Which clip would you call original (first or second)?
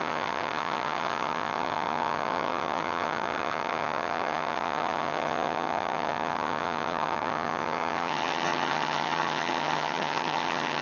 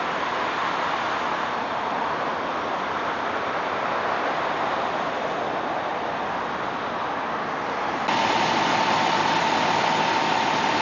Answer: second